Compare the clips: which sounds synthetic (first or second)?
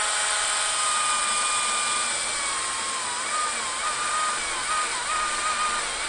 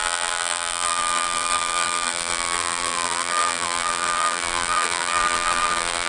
second